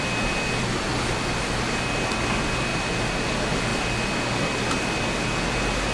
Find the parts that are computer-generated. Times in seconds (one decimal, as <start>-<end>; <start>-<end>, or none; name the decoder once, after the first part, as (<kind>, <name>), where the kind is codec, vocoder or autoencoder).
none